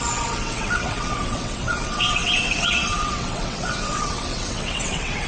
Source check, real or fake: fake